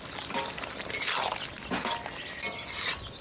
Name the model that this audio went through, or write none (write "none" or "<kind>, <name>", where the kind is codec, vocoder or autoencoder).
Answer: none